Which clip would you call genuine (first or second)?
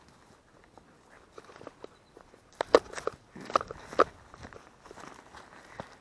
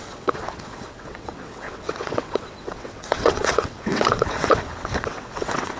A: first